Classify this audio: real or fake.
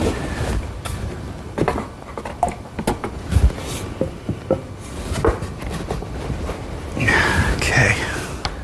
real